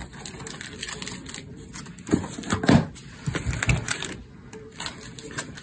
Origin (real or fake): real